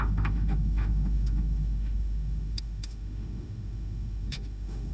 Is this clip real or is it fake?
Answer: fake